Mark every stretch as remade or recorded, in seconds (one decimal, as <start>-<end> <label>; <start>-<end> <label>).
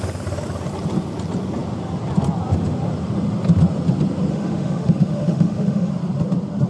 0.0-4.3 recorded; 4.3-5.9 remade; 5.9-6.7 recorded